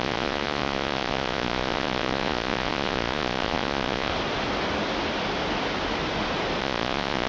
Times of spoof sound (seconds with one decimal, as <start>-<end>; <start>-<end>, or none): 0.0-4.1; 6.6-7.3